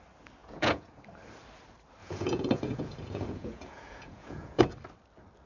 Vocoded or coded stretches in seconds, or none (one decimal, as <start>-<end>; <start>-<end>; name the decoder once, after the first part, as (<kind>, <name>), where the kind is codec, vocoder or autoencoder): 0.4-1.0 (vocoder, Vocos); 2.0-4.6